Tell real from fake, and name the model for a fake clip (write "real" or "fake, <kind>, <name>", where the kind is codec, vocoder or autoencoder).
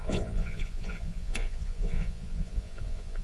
fake, vocoder, Vocos